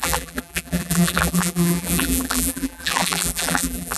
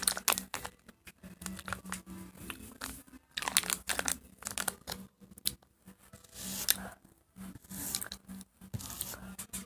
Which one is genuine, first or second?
second